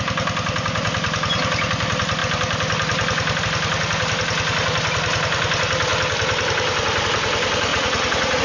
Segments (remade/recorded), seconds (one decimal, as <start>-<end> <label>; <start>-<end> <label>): 0.0-7.7 recorded; 7.7-8.4 remade